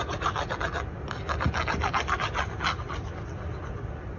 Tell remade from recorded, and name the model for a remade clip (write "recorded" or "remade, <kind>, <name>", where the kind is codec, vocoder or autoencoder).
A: recorded